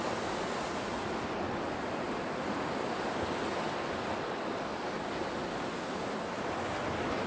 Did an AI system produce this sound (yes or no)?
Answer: no